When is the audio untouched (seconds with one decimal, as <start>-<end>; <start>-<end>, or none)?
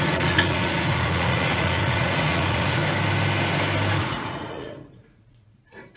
2.8-4.0